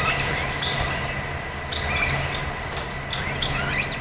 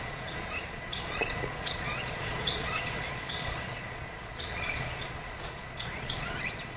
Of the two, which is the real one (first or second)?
first